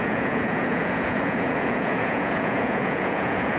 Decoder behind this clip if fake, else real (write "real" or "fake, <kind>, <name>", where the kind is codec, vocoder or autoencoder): fake, vocoder, Vocos